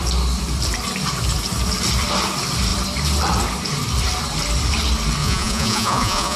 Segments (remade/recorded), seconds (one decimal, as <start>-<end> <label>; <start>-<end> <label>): 0.0-5.2 recorded; 5.2-6.4 remade